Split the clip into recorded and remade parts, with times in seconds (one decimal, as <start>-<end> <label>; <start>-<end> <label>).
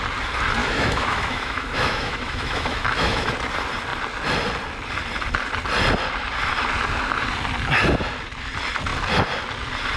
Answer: 0.0-0.6 recorded; 0.6-3.3 remade; 3.3-10.0 recorded